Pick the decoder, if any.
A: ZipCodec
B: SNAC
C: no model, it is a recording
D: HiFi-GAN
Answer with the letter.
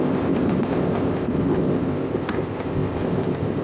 A